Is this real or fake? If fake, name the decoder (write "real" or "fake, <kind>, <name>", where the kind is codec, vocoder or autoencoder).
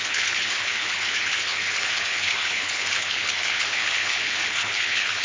fake, codec, HILCodec